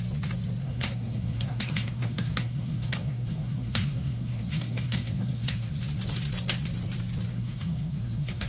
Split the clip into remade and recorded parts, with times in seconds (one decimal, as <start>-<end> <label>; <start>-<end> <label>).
0.0-0.6 recorded; 0.6-5.7 remade; 5.7-7.3 recorded; 7.3-8.5 remade